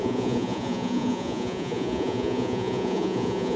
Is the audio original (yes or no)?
no